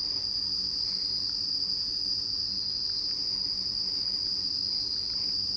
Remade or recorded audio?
recorded